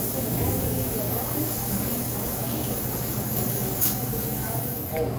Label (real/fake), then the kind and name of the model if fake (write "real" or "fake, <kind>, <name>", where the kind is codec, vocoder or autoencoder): fake, codec, DAC